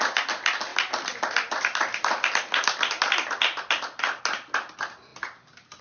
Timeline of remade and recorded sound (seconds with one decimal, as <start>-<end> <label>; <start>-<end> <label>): 0.0-0.7 recorded; 0.7-4.2 remade; 4.2-5.1 recorded; 5.1-5.8 remade